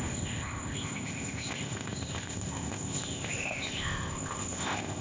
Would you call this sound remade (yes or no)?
yes